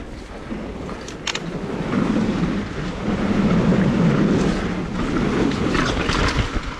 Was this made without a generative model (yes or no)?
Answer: yes